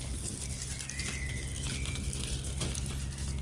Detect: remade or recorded recorded